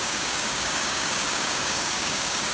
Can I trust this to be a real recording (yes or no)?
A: no